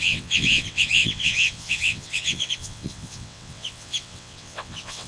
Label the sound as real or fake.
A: fake